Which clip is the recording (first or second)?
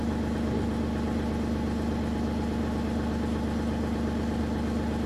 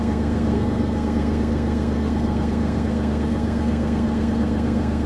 first